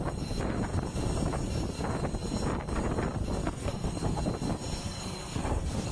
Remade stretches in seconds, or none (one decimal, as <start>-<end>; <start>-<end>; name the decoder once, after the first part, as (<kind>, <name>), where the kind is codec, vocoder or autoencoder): 3.4-4.2 (codec, SNAC); 4.8-5.9